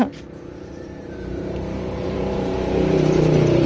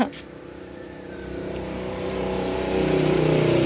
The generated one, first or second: first